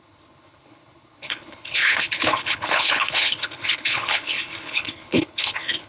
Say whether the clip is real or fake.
fake